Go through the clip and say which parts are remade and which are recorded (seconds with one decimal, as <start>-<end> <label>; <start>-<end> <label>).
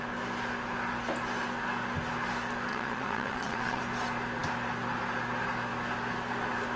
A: 0.0-2.7 recorded; 2.7-3.8 remade; 3.8-6.8 recorded